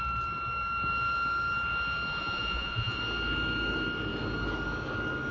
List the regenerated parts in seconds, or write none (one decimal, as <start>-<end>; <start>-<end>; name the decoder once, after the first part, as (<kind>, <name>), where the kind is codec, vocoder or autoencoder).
2.2-3.0 (vocoder, Vocos)